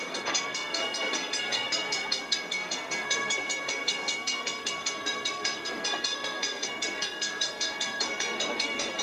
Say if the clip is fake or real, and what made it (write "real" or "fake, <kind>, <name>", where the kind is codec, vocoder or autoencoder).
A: fake, codec, SNAC